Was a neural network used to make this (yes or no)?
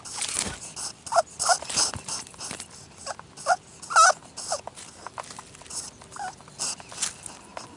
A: no